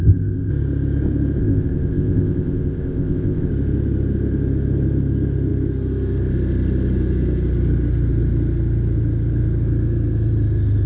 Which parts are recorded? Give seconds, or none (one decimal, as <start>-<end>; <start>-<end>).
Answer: 0.5-1.4; 3.5-10.9